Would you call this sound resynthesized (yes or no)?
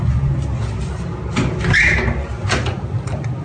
no